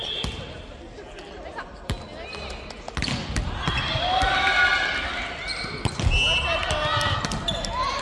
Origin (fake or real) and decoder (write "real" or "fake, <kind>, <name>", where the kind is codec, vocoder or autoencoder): real